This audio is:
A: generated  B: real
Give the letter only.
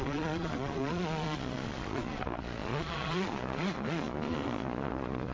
A